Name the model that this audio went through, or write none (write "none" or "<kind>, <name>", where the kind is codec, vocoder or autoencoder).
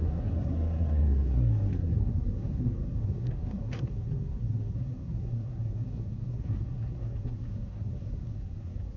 codec, SNAC